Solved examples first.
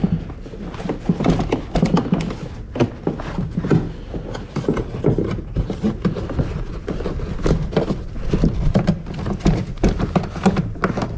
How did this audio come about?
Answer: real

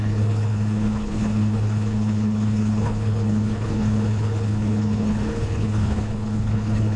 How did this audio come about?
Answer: fake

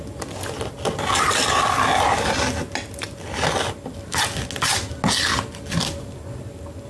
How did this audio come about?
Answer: real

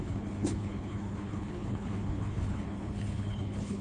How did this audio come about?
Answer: fake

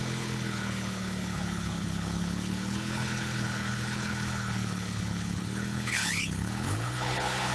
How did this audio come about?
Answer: fake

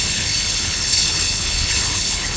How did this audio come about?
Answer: fake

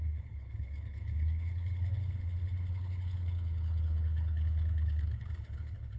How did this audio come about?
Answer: fake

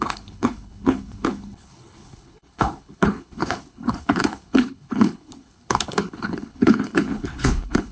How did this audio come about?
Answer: fake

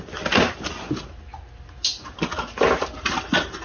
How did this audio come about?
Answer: real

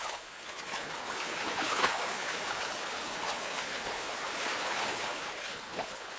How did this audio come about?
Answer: fake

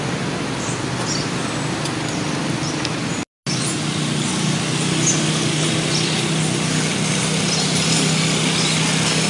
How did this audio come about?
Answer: real